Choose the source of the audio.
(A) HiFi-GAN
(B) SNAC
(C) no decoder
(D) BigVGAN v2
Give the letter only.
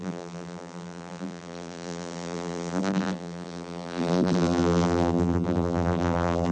D